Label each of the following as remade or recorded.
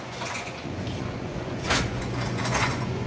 remade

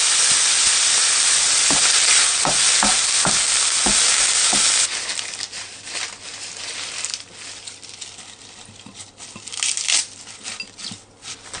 recorded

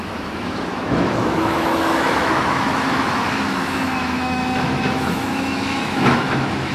remade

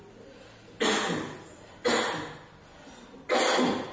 recorded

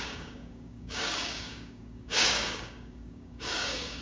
remade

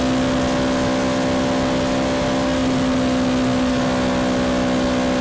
recorded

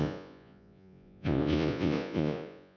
remade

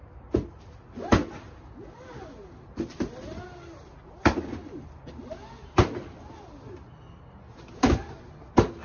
recorded